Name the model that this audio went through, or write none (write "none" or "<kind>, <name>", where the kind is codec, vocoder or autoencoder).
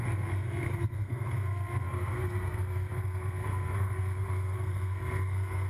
codec, SNAC